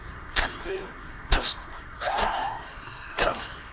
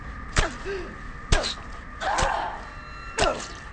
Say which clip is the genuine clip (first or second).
second